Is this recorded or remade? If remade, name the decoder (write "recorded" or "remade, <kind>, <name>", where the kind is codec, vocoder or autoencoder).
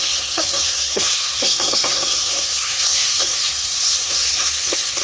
remade, codec, SNAC